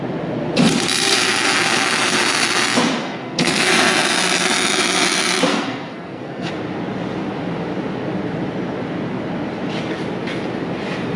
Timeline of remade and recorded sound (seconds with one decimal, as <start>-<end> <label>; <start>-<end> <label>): 0.0-3.0 recorded; 3.0-3.7 remade; 3.7-5.5 recorded; 5.5-6.5 remade; 6.5-11.2 recorded

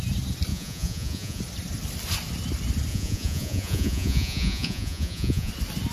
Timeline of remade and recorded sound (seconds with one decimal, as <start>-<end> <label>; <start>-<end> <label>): 0.0-0.5 recorded; 0.5-1.4 remade; 1.4-2.9 recorded; 2.9-5.5 remade; 5.5-5.9 recorded

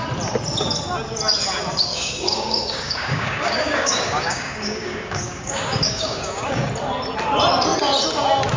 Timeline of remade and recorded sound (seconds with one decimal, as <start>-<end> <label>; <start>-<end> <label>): 0.0-1.9 recorded; 1.9-6.7 remade; 6.7-8.6 recorded

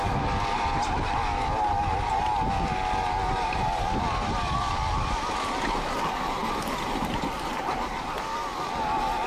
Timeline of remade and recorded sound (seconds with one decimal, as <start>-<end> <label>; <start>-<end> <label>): 0.0-9.3 recorded

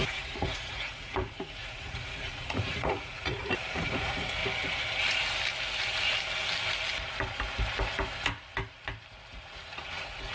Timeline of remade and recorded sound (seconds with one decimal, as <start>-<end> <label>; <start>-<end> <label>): 0.0-4.4 remade; 4.4-9.4 recorded; 9.4-10.3 remade

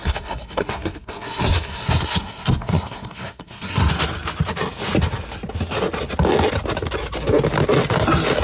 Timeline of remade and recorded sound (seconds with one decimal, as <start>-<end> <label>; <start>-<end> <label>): 0.0-3.9 remade; 3.9-8.4 recorded

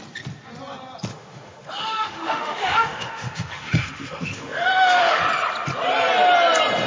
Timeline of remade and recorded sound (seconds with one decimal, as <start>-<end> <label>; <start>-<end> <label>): 0.0-1.1 recorded; 1.1-5.2 remade; 5.2-6.9 recorded